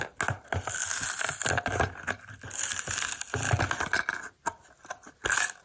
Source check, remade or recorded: recorded